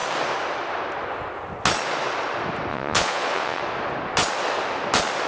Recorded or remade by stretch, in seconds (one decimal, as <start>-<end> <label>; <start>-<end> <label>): 0.0-2.7 recorded; 2.7-3.6 remade; 3.6-5.3 recorded